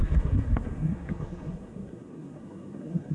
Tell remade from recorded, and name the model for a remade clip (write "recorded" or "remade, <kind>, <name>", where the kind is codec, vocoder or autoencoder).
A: remade, codec, SNAC